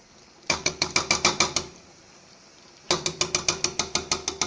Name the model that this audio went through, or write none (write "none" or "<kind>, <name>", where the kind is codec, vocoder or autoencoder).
none